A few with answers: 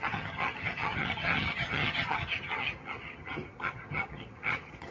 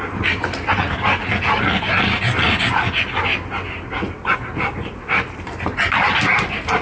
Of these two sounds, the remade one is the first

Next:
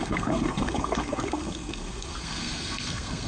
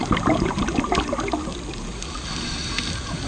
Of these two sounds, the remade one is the first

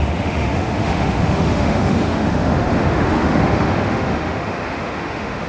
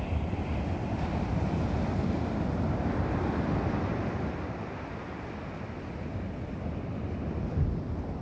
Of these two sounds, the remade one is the first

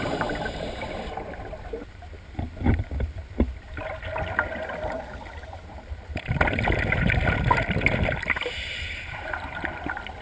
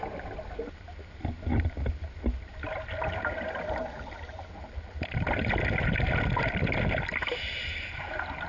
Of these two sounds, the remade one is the first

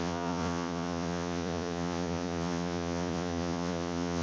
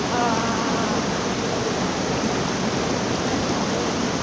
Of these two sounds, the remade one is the first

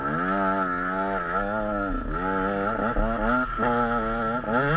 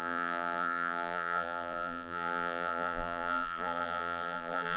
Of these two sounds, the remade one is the second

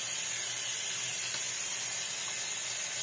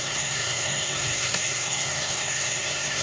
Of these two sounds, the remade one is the second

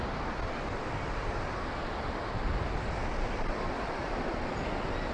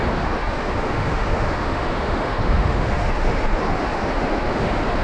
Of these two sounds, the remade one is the second